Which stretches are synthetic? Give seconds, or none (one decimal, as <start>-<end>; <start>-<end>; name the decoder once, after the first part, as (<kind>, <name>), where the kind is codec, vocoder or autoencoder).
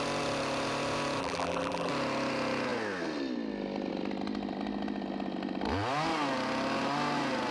1.2-1.9 (vocoder, BigVGAN v2)